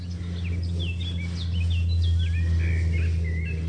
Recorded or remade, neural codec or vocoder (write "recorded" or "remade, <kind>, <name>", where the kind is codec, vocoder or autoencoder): recorded